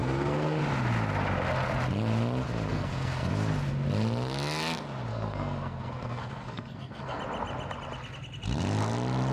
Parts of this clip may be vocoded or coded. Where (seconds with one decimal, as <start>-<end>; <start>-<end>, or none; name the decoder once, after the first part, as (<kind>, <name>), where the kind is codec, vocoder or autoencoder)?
0.0-0.6 (codec, SNAC); 2.7-3.3; 5.1-7.2